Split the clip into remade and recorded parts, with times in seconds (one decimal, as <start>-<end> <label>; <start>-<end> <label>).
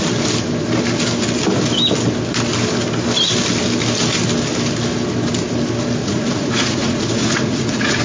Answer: 0.0-6.0 recorded; 6.0-8.0 remade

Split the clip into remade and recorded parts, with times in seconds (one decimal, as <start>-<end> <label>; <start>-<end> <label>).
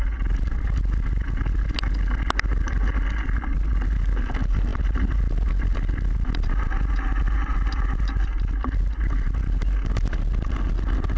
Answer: 0.0-11.2 recorded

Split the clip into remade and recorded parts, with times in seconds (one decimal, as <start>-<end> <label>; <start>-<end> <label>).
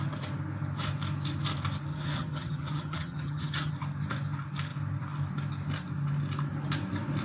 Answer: 0.0-1.9 recorded; 1.9-3.7 remade; 3.7-7.2 recorded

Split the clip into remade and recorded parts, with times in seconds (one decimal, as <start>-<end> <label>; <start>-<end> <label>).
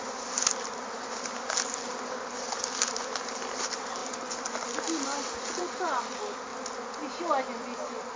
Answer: 0.0-8.2 recorded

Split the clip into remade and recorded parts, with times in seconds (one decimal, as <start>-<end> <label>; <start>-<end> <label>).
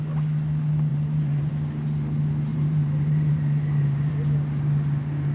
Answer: 0.0-0.9 recorded; 0.9-1.5 remade; 1.5-2.5 recorded; 2.5-4.1 remade; 4.1-5.3 recorded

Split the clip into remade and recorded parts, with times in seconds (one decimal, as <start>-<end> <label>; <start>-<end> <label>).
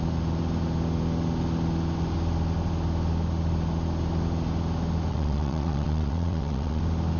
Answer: 0.0-5.1 recorded; 5.1-6.8 remade; 6.8-7.2 recorded